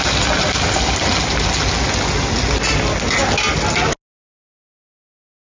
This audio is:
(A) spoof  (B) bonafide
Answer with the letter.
B